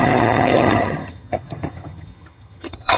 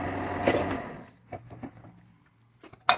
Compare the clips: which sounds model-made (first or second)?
first